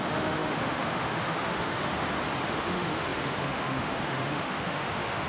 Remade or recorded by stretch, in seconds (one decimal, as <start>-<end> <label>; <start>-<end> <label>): 0.0-1.9 remade; 1.9-2.4 recorded; 2.4-5.3 remade